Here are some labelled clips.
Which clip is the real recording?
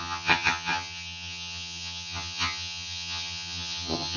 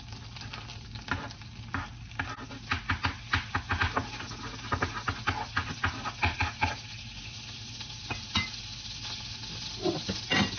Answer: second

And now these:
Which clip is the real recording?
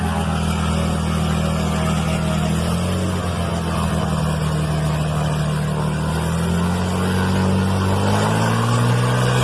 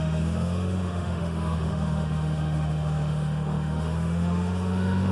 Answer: first